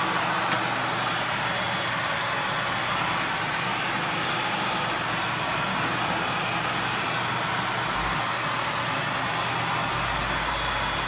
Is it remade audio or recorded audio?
recorded